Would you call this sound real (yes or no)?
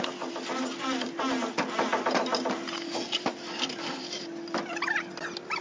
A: yes